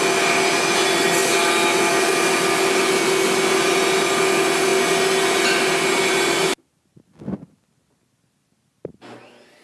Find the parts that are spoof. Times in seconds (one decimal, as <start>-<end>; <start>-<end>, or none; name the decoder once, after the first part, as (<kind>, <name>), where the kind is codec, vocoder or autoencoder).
none